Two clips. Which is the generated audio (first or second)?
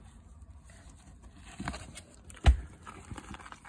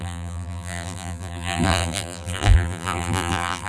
second